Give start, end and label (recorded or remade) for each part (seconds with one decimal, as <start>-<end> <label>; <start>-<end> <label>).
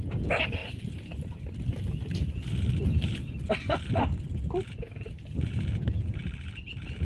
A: 0.0-0.6 remade; 0.6-4.7 recorded; 4.7-6.2 remade; 6.2-7.0 recorded